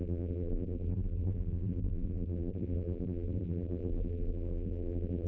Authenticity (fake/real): fake